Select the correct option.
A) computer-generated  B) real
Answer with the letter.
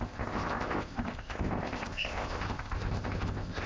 A